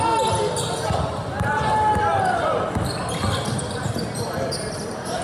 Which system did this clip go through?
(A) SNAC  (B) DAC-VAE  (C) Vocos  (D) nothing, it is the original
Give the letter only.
D